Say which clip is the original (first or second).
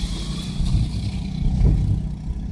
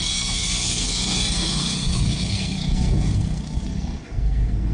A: first